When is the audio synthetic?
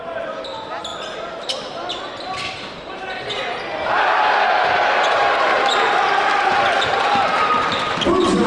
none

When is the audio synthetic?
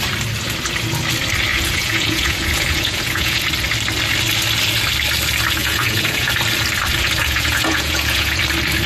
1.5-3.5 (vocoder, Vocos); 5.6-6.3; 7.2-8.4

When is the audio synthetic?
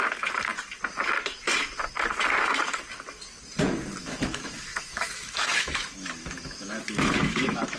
4.0-7.8 (autoencoder, DAC-VAE)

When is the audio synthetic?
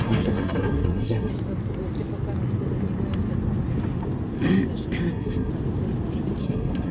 0.0-1.3 (codec, SNAC); 5.1-5.5; 6.4-6.9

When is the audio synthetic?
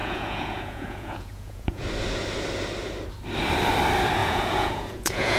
0.0-1.8 (vocoder, Vocos); 4.2-5.4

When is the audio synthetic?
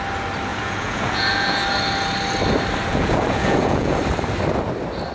0.5-1.6 (vocoder, Vocos); 2.9-4.0